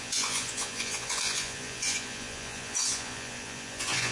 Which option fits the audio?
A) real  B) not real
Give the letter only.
B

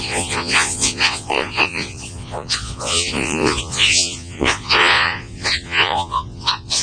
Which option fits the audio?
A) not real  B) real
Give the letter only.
A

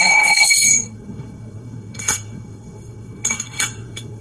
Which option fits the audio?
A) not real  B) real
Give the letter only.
A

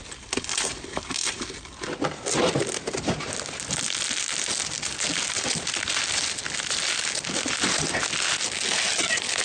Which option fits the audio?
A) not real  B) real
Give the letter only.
B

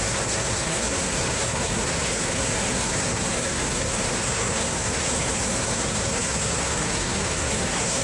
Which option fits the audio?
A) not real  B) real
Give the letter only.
A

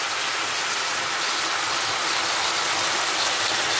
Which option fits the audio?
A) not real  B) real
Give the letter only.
B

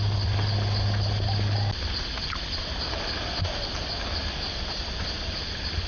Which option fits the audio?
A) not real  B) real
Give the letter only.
B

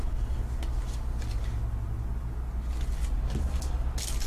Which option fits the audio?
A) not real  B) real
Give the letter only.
B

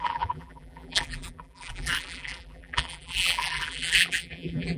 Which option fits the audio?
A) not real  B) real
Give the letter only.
A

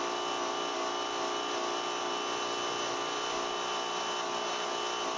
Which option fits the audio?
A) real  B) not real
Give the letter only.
A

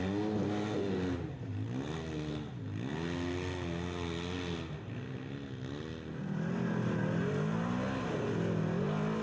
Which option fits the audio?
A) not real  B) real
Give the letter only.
B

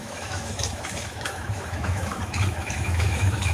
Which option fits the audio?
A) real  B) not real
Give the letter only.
B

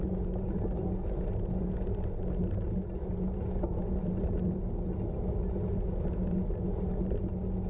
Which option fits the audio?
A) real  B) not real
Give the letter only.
A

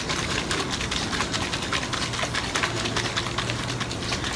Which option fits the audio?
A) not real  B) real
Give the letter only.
B